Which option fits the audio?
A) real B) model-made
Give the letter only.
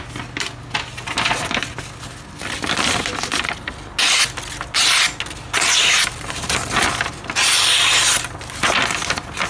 A